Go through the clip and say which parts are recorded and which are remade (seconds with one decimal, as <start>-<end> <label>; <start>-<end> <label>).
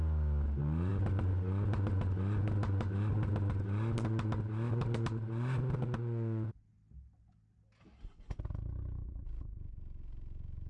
0.0-10.7 recorded